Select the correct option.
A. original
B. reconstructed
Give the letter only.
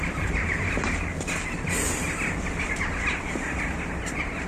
A